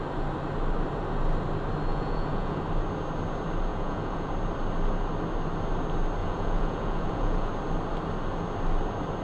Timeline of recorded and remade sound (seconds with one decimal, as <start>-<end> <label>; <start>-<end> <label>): 0.0-1.9 recorded; 1.9-2.6 remade; 2.6-3.7 recorded; 3.7-4.3 remade; 4.3-6.2 recorded; 6.2-7.5 remade; 7.5-9.2 recorded